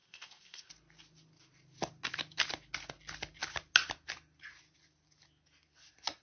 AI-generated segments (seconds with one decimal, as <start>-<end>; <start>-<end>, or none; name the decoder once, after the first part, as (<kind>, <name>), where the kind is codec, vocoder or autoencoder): 0.0-0.7 (codec, ZipCodec)